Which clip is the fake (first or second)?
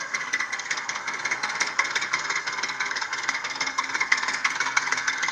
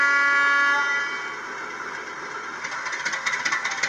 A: first